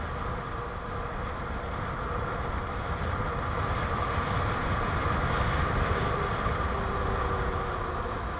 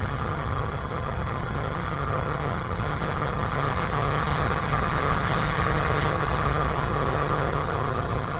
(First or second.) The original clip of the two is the first